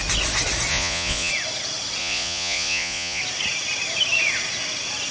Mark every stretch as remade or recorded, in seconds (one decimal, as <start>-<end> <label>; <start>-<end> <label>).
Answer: 0.0-0.7 recorded; 0.7-1.3 remade; 1.3-2.0 recorded; 2.0-3.2 remade; 3.2-5.1 recorded